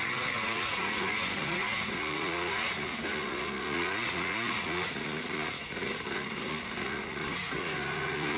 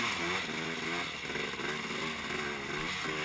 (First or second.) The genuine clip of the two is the second